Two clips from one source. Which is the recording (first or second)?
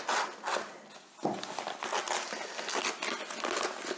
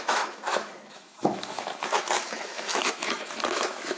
first